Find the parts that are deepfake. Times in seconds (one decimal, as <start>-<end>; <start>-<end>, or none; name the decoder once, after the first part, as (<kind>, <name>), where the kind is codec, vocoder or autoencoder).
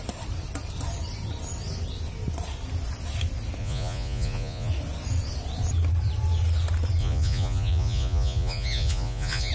3.6-4.7 (vocoder, Vocos); 7.0-9.5